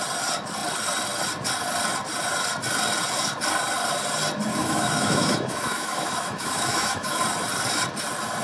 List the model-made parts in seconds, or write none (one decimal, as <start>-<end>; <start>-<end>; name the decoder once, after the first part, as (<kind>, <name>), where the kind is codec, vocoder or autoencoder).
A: 4.5-7.2 (autoencoder, DAC-VAE)